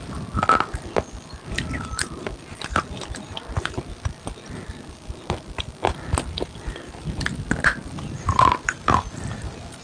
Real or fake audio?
real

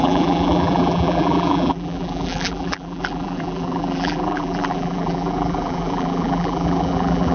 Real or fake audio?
fake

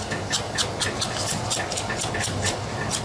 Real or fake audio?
real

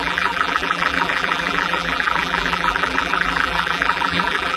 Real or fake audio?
fake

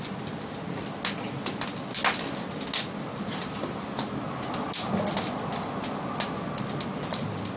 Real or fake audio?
real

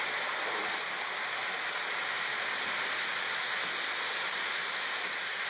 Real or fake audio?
real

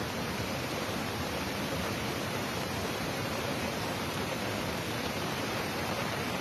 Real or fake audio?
fake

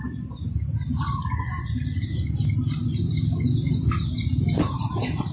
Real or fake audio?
real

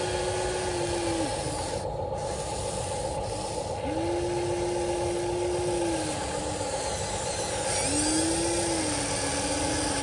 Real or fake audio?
real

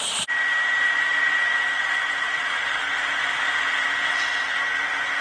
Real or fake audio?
fake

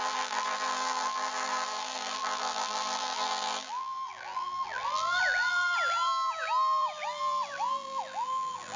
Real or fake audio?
fake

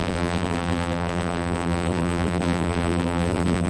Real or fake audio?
fake